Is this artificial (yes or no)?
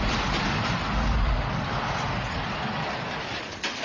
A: no